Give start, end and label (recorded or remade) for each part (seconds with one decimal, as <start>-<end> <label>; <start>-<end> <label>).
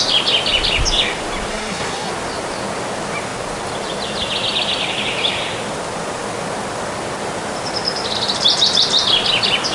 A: 0.0-1.5 recorded; 1.5-2.1 remade; 2.1-9.7 recorded